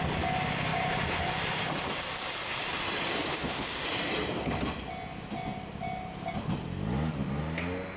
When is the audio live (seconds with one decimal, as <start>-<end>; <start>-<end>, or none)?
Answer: 0.0-0.7; 3.1-8.0